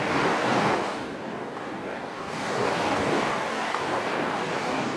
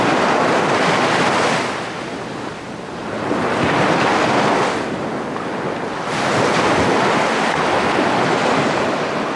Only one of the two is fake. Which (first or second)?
first